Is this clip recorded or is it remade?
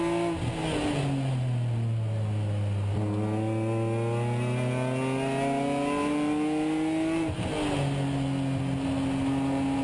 recorded